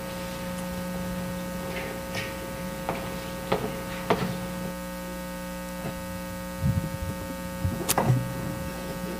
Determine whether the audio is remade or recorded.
recorded